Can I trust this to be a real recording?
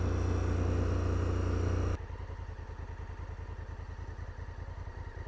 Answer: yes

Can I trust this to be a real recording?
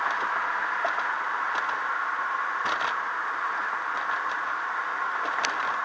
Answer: yes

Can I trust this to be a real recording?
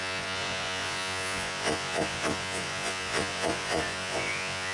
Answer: no